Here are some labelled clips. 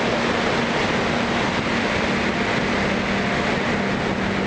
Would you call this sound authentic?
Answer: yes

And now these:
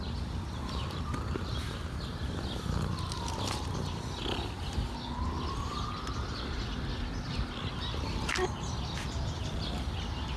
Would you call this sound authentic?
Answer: yes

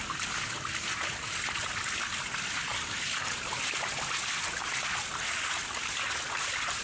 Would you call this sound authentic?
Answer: yes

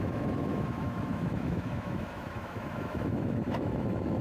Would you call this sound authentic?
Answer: no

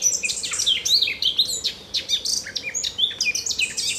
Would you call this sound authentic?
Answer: yes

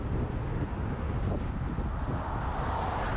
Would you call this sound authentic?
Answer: yes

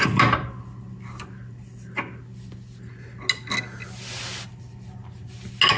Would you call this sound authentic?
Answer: yes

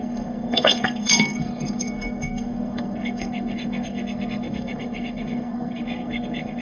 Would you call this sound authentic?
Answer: no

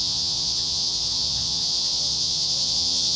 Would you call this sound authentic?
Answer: no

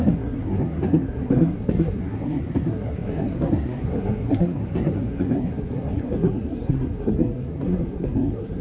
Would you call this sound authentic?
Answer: no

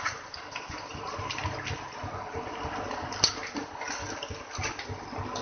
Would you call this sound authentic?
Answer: yes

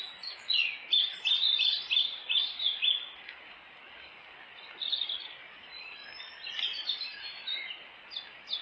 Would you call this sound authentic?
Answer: yes